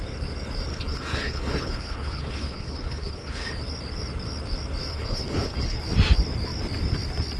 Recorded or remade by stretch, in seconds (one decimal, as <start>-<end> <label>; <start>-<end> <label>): 0.0-0.7 recorded; 0.7-3.5 remade; 3.5-4.9 recorded; 4.9-5.8 remade; 5.8-7.4 recorded